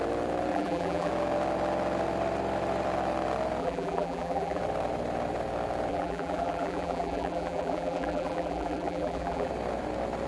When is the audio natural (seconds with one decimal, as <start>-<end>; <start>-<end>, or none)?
0.0-0.5; 1.1-3.6; 4.6-5.9; 9.5-10.3